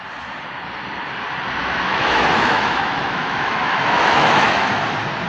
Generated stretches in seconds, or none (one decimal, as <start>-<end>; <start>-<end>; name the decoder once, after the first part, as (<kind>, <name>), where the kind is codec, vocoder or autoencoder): 1.6-4.8 (autoencoder, DAC-VAE)